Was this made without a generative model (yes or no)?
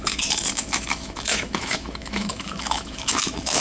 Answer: no